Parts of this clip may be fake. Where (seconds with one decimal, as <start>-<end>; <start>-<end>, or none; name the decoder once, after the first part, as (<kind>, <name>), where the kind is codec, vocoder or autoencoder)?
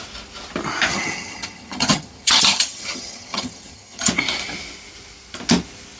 0.9-4.1 (vocoder, HiFi-GAN)